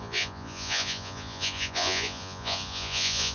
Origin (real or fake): fake